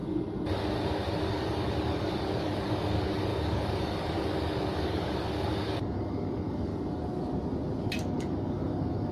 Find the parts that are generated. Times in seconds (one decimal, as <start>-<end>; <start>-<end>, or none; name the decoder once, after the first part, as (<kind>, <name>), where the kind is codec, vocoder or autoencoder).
1.3-6.7 (codec, DAC); 7.8-9.1